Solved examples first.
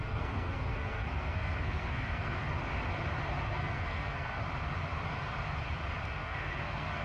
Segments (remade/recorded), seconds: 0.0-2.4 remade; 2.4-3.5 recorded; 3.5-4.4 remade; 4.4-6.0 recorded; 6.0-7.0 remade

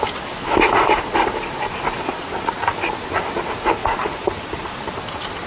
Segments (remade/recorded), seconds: 0.0-3.8 recorded; 3.8-4.8 remade; 4.8-5.5 recorded

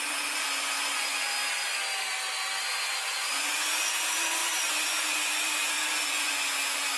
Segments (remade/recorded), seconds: 0.0-1.4 remade; 1.4-3.0 recorded; 3.0-7.0 remade

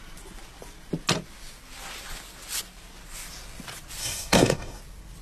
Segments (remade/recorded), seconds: 0.0-4.0 recorded; 4.0-4.8 remade; 4.8-5.2 recorded

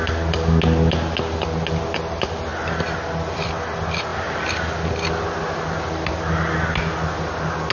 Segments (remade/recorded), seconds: 0.0-7.7 recorded

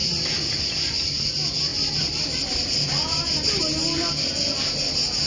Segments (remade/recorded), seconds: 0.0-5.3 recorded

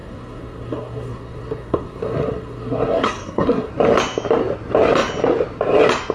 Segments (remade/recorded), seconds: 0.0-3.7 remade; 3.7-6.1 recorded

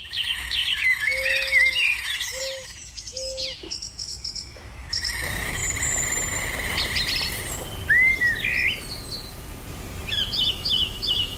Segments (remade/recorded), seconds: 0.0-5.6 remade; 5.6-10.5 recorded; 10.5-11.4 remade